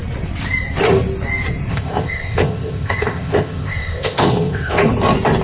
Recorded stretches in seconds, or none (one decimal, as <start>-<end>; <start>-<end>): 0.0-1.7; 4.9-5.4